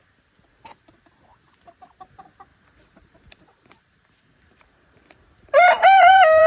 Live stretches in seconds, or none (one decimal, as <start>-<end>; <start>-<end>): 0.0-2.5